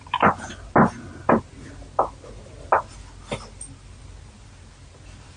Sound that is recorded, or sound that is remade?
recorded